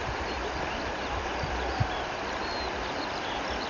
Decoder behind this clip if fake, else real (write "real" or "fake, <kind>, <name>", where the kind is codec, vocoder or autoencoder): real